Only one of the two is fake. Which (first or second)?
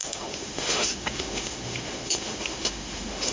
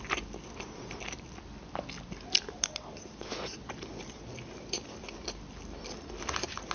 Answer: first